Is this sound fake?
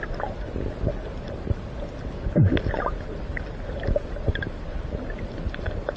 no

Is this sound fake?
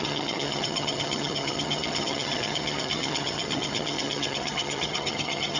yes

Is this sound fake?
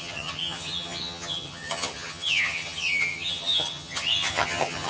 yes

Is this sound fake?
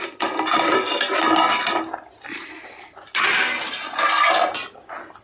no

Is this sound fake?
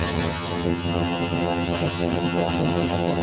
yes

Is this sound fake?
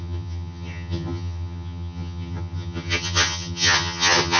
yes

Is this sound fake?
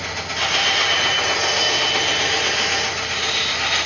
no